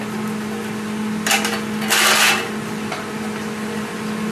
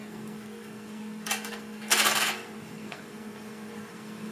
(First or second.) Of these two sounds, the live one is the first